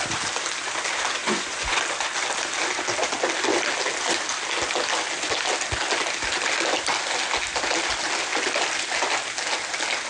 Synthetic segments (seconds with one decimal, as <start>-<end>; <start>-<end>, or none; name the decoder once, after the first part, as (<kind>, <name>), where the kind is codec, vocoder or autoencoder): 1.2-1.8 (vocoder, Vocos)